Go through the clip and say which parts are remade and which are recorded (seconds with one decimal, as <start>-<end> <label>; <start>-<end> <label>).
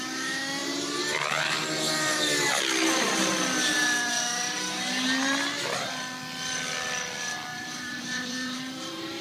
0.0-0.6 recorded; 0.6-2.6 remade; 2.6-7.5 recorded; 7.5-9.2 remade